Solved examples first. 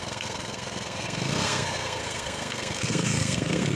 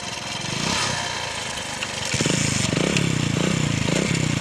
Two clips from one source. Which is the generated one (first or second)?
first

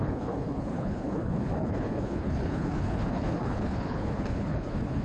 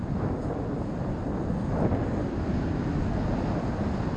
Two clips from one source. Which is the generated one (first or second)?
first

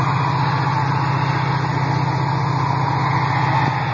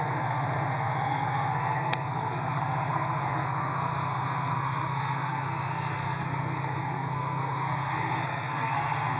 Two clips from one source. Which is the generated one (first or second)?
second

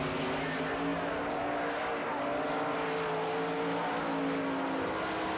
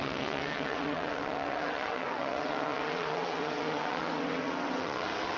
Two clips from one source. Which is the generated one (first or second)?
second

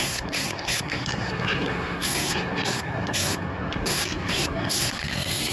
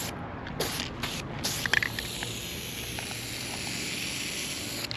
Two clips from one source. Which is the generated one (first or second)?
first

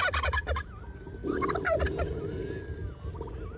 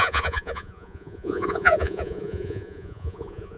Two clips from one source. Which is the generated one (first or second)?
second